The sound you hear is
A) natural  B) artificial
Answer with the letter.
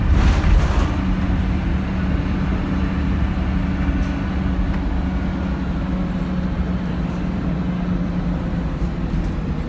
A